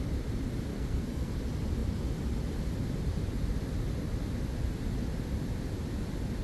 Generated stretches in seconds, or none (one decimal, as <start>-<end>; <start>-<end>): 0.7-1.3